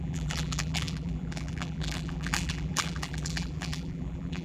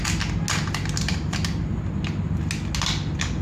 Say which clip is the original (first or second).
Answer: second